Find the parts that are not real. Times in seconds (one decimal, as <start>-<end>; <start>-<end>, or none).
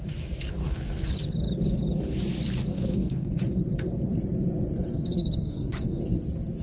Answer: 0.6-1.1; 2.7-3.3; 4.9-6.0